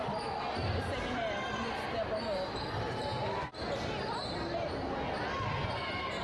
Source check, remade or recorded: recorded